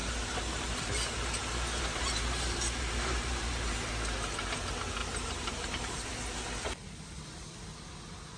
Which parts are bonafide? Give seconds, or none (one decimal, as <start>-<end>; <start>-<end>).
3.9-5.0; 6.1-8.4